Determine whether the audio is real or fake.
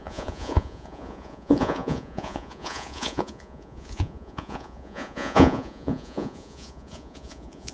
fake